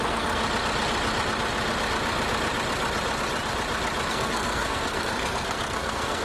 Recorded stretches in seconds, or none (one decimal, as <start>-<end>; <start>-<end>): 0.4-4.1